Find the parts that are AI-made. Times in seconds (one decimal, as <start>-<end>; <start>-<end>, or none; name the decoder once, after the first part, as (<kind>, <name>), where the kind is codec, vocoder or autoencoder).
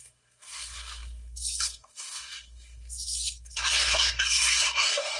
0.0-5.2 (codec, SNAC)